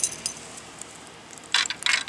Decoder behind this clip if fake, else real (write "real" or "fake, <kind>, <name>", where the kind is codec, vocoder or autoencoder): real